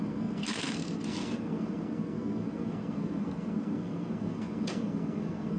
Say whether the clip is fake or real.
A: fake